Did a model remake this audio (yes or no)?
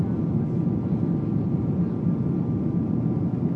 no